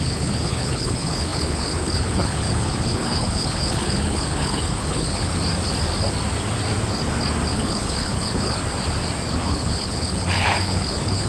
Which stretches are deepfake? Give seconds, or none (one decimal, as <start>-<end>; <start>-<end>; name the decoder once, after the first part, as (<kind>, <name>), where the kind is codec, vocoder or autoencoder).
0.0-5.3 (codec, HILCodec); 7.5-8.6; 9.3-11.3